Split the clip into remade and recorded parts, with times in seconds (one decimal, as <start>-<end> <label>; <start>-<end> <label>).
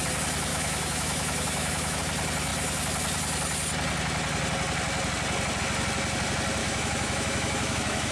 0.0-0.5 recorded; 0.5-2.0 remade; 2.0-6.6 recorded; 6.6-8.1 remade